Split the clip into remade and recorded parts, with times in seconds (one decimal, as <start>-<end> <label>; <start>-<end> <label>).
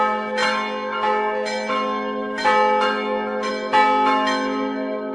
0.0-5.1 recorded